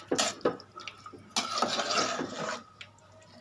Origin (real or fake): real